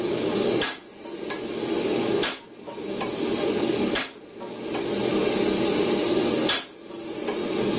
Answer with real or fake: real